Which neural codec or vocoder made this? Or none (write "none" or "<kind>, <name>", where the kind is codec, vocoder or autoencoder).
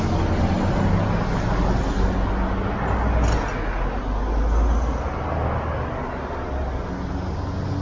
none